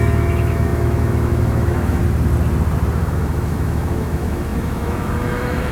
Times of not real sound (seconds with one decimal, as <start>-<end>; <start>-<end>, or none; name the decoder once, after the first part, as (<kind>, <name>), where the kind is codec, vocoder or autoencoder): 0.0-2.0 (autoencoder, DAC-VAE); 3.0-5.7

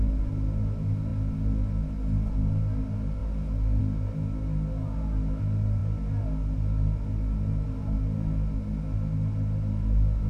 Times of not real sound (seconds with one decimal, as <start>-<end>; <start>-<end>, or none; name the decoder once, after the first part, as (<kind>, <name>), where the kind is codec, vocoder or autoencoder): none

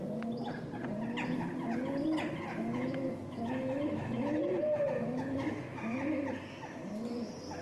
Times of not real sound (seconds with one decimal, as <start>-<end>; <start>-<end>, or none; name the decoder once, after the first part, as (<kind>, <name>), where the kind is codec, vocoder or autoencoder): 2.5-5.8 (autoencoder, DAC-VAE)

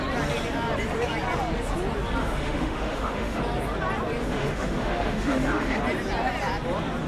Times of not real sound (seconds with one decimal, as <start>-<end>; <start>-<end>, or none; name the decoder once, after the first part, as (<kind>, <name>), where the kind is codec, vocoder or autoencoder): 2.2-3.4 (autoencoder, DAC-VAE); 4.2-5.8

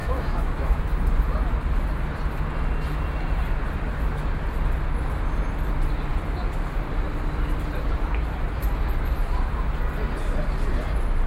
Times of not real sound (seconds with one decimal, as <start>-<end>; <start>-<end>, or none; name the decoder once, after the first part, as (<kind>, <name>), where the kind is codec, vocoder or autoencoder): 0.0-0.8 (autoencoder, DAC-VAE)

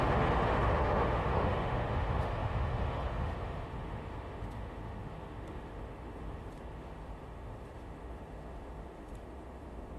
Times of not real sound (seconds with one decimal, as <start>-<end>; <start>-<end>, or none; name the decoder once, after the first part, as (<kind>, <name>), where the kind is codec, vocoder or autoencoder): 0.0-10.0 (autoencoder, DAC-VAE)

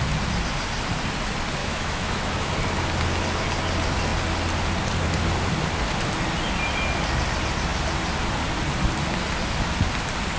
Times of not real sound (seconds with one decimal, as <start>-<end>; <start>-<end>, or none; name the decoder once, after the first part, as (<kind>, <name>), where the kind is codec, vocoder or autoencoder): 1.6-2.5 (autoencoder, DAC-VAE)

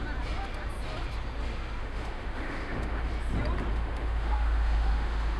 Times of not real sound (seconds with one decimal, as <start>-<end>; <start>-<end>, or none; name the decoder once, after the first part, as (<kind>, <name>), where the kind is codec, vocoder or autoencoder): 1.8-3.1 (autoencoder, DAC-VAE); 3.7-5.4